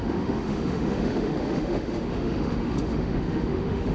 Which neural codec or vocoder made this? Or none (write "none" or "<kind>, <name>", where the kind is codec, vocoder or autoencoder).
autoencoder, DAC-VAE